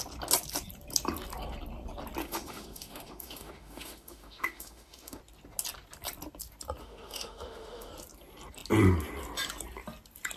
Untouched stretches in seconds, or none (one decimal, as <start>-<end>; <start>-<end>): 0.0-2.2; 5.2-6.8; 7.9-10.4